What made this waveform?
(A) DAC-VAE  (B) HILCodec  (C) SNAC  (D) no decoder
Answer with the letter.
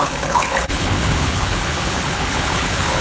B